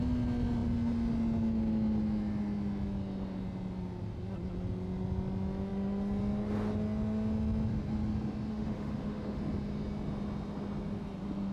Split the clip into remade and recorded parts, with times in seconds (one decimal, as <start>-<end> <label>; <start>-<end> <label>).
0.0-8.5 recorded; 8.5-9.4 remade; 9.4-11.5 recorded